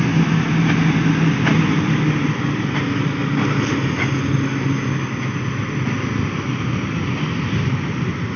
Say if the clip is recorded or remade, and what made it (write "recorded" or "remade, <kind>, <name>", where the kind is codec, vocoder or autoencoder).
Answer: recorded